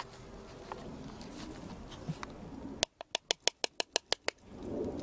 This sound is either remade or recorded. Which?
recorded